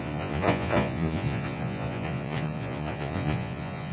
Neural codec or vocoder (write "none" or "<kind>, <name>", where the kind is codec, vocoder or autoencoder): vocoder, Vocos